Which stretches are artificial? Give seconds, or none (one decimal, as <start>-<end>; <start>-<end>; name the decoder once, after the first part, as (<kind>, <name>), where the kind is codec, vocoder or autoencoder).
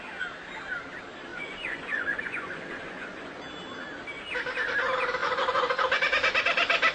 1.3-3.4 (vocoder, Vocos); 5.2-5.8